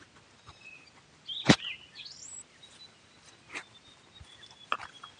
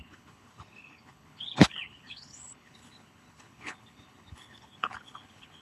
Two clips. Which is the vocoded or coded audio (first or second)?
second